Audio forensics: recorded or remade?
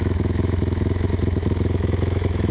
remade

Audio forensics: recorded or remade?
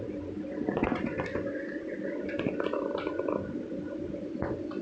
recorded